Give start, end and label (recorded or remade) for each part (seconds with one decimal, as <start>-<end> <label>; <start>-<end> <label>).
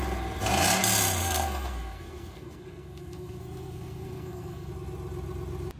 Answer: 0.0-1.2 recorded; 1.2-4.7 remade; 4.7-5.8 recorded